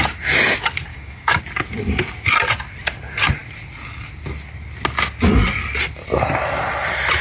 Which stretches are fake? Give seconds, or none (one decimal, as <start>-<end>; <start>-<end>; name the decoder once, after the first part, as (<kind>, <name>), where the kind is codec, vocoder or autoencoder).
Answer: 0.9-1.4 (codec, DAC)